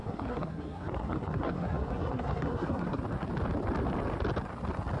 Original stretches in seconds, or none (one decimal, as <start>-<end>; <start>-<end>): 3.0-5.0